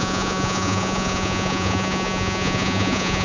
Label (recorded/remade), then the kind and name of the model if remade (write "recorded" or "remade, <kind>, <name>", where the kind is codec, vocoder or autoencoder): remade, vocoder, Vocos